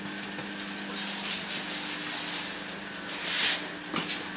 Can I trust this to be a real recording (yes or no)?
yes